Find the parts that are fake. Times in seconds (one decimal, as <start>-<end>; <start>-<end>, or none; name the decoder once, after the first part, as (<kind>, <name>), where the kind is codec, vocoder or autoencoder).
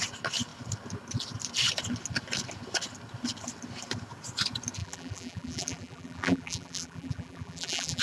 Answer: 4.8-8.0 (vocoder, BigVGAN v2)